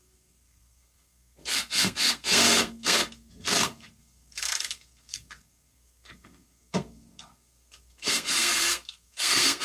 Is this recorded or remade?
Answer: remade